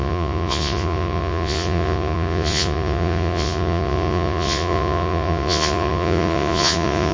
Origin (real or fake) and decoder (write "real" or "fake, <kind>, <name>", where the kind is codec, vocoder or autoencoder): fake, vocoder, Vocos